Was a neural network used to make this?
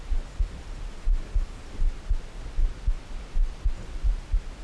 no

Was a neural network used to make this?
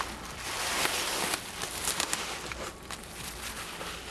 no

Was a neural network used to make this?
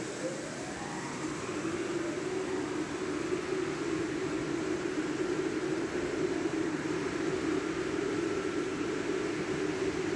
no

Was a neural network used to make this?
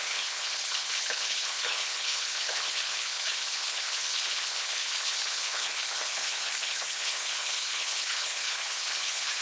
yes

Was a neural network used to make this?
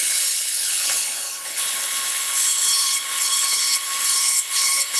yes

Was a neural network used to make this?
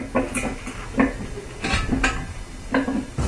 no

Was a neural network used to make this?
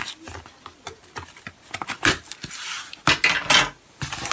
no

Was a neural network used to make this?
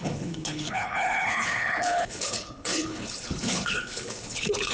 yes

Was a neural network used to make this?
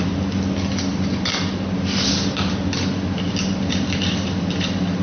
no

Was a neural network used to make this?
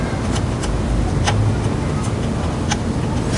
no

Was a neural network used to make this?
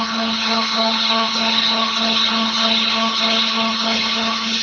yes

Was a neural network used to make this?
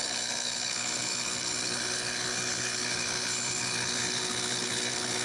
yes